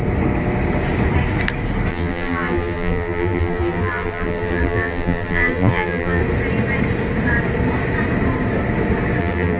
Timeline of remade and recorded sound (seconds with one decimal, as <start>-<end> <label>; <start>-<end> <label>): 0.0-1.9 recorded; 1.9-6.2 remade; 6.2-9.2 recorded; 9.2-9.6 remade